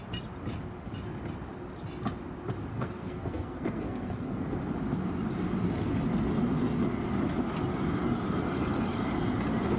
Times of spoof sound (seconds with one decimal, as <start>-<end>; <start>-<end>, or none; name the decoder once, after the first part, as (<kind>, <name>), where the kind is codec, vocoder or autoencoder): 2.7-4.6 (codec, SNAC)